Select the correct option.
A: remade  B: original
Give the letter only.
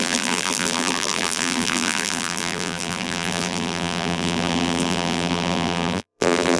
A